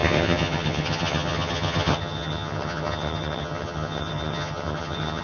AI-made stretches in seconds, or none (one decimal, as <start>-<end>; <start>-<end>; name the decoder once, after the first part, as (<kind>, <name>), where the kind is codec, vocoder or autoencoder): 0.0-5.2 (vocoder, HiFi-GAN)

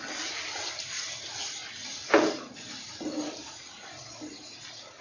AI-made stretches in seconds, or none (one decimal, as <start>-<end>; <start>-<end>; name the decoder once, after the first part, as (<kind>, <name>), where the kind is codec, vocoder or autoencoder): none